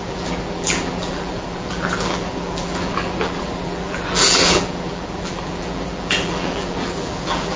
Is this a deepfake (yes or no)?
yes